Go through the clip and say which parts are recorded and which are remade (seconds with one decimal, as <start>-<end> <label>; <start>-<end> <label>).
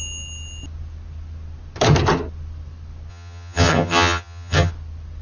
0.0-3.1 recorded; 3.1-4.7 remade; 4.7-5.2 recorded